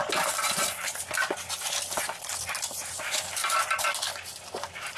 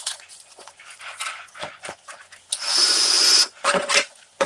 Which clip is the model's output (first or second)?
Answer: second